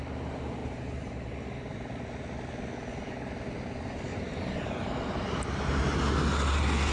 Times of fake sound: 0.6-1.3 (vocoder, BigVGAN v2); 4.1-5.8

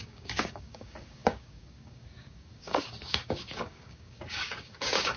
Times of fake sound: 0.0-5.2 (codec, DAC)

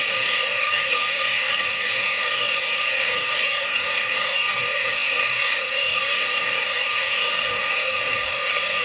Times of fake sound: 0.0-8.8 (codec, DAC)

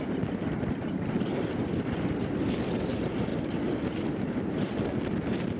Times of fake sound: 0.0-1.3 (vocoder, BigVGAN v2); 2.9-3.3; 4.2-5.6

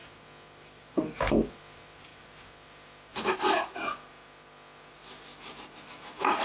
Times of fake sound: none

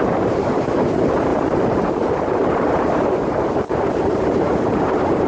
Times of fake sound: 0.0-5.3 (vocoder, BigVGAN v2)

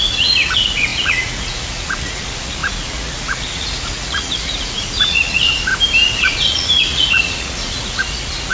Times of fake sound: 0.0-5.7 (vocoder, Vocos); 6.2-8.5